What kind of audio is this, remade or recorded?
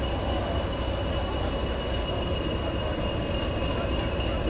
recorded